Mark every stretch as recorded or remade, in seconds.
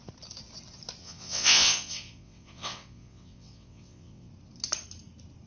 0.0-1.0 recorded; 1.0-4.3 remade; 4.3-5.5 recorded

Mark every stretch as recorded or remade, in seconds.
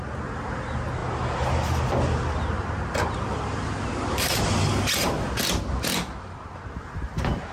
0.0-7.5 recorded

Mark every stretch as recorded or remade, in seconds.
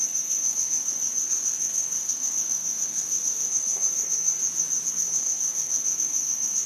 0.0-4.4 remade; 4.4-4.9 recorded; 4.9-6.7 remade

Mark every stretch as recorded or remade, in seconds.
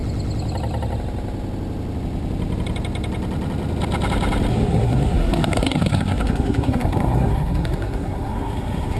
0.0-4.5 recorded; 4.5-9.0 remade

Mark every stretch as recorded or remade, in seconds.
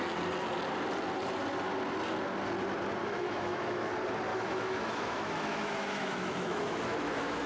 0.0-3.0 recorded; 3.0-3.9 remade; 3.9-4.3 recorded; 4.3-7.5 remade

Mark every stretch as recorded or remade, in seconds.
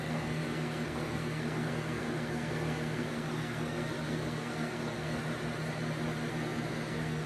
0.0-5.2 remade; 5.2-6.3 recorded; 6.3-7.3 remade